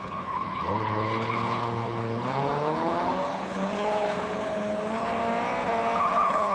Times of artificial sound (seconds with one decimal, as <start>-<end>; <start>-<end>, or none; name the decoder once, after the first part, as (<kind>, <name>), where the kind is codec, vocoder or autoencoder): 0.0-5.2 (codec, HILCodec); 6.0-6.5